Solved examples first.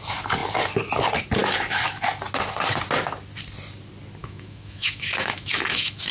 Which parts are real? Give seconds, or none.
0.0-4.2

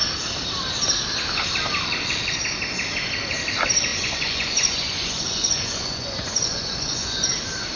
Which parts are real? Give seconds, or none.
0.0-3.9; 7.3-7.8

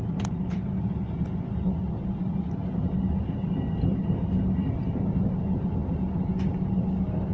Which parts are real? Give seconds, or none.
0.0-7.3

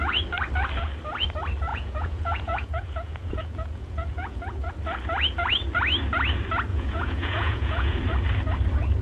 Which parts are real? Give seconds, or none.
0.0-1.7; 4.7-6.7; 8.0-9.0

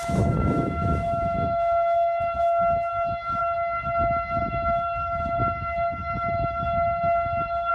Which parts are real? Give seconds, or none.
none